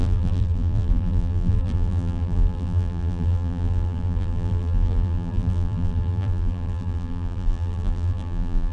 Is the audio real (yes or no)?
no